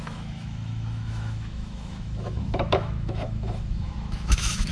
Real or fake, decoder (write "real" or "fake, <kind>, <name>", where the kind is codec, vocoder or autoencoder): fake, autoencoder, DAC-VAE